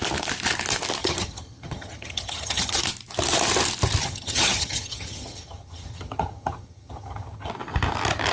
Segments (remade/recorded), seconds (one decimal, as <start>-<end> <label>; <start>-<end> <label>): 0.0-1.0 recorded; 1.0-2.8 remade; 2.8-4.0 recorded; 4.0-7.5 remade; 7.5-8.3 recorded